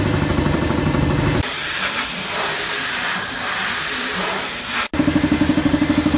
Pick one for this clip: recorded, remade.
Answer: recorded